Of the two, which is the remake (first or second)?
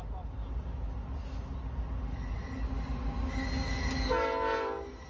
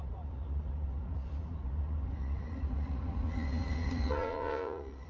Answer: second